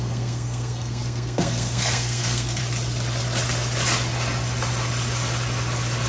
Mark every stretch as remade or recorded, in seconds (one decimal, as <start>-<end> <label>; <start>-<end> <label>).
0.0-2.6 remade; 2.6-6.1 recorded